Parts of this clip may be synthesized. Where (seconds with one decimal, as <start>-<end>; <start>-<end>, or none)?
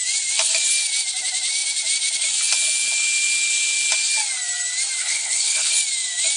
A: 5.0-5.7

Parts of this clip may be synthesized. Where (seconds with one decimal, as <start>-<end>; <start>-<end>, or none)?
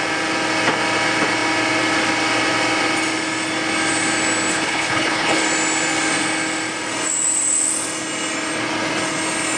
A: 4.5-5.4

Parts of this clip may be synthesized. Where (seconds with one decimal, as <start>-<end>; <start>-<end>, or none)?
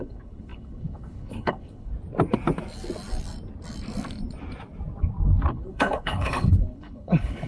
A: 0.0-1.9; 5.5-7.5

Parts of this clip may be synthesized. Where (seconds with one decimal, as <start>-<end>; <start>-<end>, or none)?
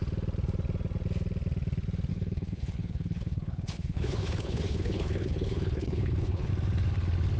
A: 2.1-6.5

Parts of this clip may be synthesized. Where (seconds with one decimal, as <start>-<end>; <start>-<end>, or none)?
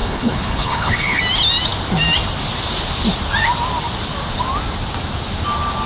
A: 0.0-1.2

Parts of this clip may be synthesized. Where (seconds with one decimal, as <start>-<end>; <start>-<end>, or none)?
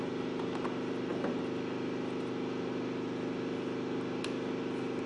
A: none